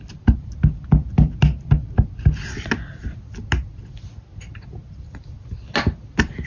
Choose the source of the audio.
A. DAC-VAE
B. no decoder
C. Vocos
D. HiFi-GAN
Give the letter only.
B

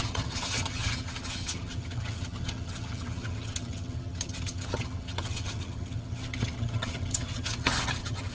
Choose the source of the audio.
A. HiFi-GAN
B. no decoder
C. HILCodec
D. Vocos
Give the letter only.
A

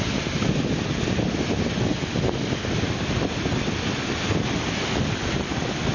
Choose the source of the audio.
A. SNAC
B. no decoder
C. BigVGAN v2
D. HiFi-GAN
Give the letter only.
B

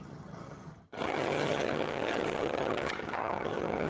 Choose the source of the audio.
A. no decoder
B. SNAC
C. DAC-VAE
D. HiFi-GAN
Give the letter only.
D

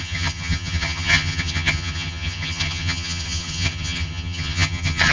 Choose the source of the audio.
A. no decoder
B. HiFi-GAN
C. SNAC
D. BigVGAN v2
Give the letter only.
B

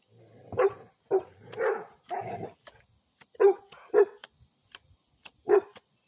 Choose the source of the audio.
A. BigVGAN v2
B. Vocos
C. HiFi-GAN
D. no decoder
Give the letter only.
D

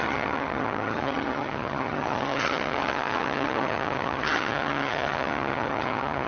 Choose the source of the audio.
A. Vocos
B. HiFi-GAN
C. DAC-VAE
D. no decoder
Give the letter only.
B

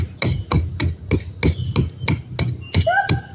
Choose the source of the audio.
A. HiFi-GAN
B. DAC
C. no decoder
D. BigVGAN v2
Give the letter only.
C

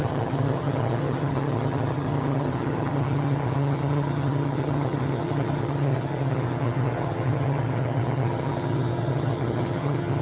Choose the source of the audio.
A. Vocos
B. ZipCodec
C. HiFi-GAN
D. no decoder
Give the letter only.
C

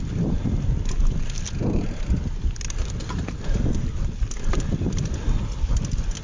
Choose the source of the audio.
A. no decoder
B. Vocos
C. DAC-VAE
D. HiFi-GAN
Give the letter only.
A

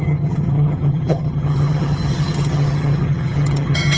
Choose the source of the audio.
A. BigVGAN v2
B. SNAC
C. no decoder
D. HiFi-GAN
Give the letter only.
D